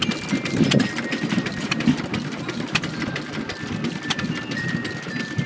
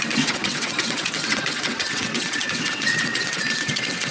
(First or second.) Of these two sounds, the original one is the first